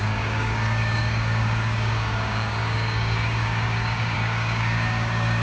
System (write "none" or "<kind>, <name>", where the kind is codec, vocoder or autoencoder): codec, DAC